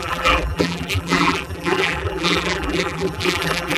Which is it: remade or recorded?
remade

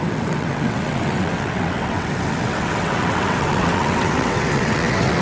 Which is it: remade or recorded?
remade